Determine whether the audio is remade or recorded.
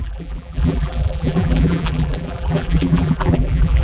remade